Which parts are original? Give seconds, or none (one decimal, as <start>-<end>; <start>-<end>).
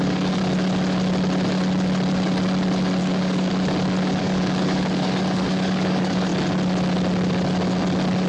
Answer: 0.4-3.0; 3.5-4.2; 6.3-8.3